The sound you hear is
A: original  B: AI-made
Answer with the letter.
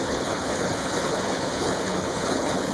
B